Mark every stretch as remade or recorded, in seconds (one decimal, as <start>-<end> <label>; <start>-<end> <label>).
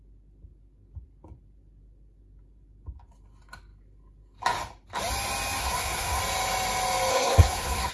0.0-5.6 recorded; 5.6-6.2 remade; 6.2-7.1 recorded; 7.1-7.9 remade